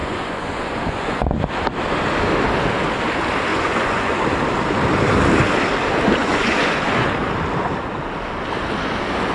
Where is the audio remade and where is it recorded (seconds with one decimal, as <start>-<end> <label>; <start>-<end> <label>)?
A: 0.0-1.5 remade; 1.5-3.5 recorded; 3.5-4.2 remade; 4.2-6.2 recorded; 6.2-7.1 remade; 7.1-9.3 recorded